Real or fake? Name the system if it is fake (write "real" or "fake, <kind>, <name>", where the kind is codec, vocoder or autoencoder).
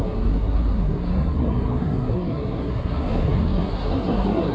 fake, codec, SNAC